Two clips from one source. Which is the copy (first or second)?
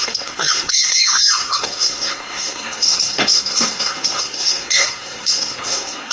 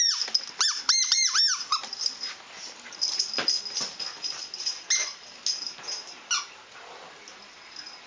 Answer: first